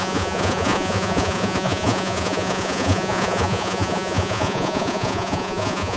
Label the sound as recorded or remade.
remade